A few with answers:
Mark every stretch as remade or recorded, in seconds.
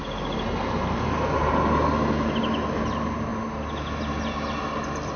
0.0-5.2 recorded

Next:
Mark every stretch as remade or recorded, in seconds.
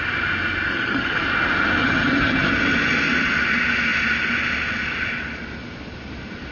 0.0-0.7 recorded; 0.7-1.2 remade; 1.2-1.8 recorded; 1.8-2.5 remade; 2.5-6.5 recorded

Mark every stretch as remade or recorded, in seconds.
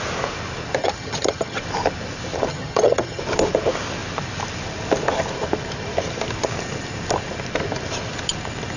0.0-0.8 recorded; 0.8-1.6 remade; 1.6-2.5 recorded; 2.5-3.2 remade; 3.2-8.8 recorded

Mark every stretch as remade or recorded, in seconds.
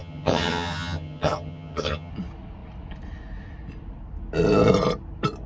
0.0-2.1 remade; 2.1-5.5 recorded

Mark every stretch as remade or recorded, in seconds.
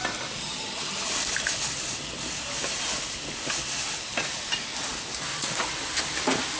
0.0-0.4 recorded; 0.4-1.1 remade; 1.1-6.6 recorded